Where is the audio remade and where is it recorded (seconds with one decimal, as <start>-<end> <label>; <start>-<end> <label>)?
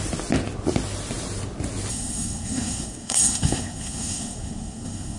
0.0-1.9 recorded; 1.9-5.2 remade